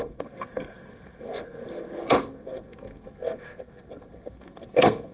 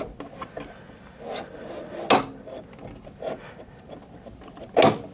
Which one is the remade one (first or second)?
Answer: first